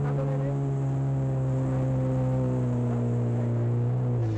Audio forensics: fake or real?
real